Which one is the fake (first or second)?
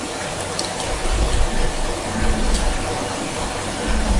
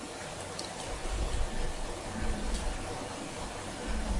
second